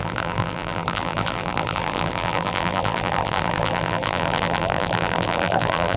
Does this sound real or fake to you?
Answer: fake